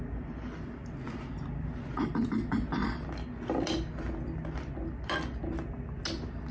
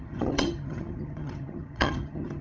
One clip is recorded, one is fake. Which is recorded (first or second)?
first